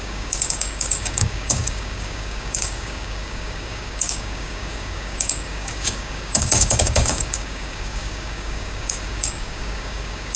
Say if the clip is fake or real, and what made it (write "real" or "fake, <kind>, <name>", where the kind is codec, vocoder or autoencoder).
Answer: fake, codec, DAC